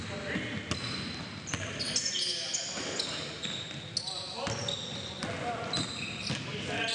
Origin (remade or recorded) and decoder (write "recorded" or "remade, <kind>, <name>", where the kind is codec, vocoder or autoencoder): recorded